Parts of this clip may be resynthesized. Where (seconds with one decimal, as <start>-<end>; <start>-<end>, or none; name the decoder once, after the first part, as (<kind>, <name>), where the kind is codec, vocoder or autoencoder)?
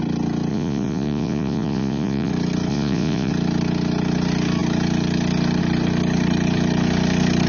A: 0.5-2.3 (vocoder, Vocos); 2.7-3.3